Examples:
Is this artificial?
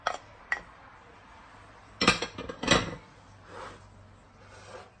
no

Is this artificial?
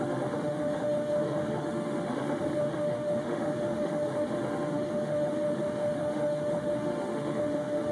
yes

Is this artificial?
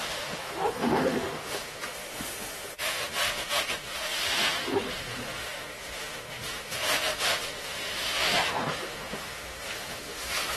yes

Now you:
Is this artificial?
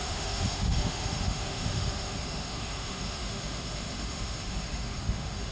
yes